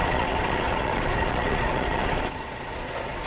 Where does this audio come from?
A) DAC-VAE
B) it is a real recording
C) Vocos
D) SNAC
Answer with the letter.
C